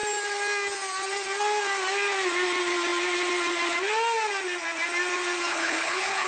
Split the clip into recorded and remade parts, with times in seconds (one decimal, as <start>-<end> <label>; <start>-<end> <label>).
0.0-5.5 recorded; 5.5-6.3 remade